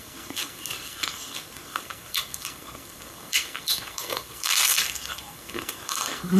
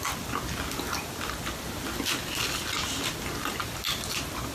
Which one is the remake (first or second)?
first